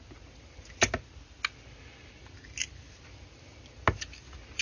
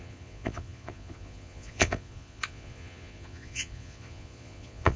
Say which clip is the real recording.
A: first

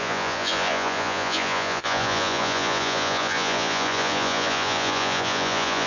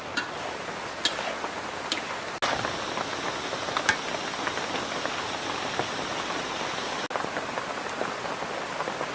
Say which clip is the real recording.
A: second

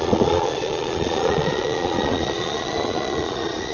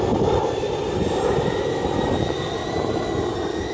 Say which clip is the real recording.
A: second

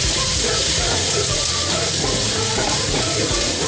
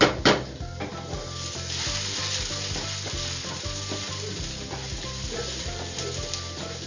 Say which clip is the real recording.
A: second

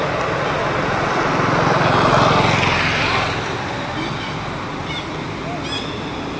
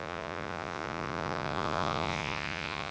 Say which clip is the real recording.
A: first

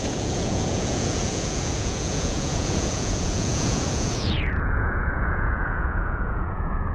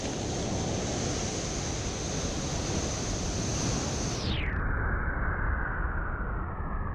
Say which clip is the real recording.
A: second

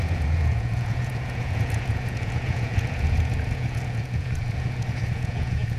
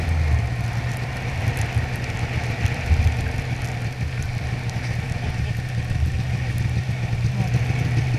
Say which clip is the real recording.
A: second